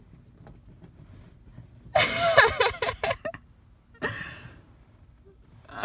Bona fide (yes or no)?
yes